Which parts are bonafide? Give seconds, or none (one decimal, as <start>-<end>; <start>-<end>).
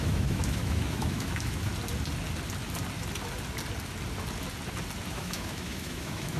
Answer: 1.7-5.1